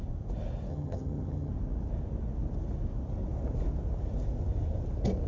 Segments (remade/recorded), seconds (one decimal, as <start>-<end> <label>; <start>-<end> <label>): 0.0-0.7 recorded; 0.7-1.5 remade; 1.5-5.3 recorded